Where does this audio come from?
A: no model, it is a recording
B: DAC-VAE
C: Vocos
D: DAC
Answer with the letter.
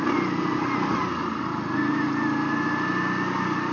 A